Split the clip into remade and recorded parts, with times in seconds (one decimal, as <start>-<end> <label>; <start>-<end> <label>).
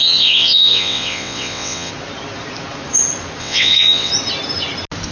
0.0-1.9 remade; 1.9-3.4 recorded; 3.4-4.1 remade; 4.1-5.1 recorded